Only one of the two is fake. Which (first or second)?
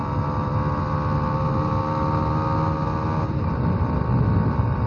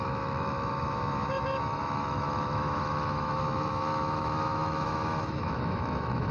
second